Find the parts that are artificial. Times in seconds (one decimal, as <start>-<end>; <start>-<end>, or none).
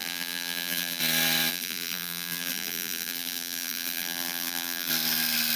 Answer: 0.0-1.0; 1.5-4.9